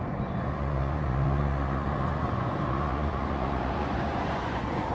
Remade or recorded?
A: remade